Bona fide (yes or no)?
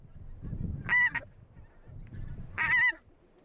yes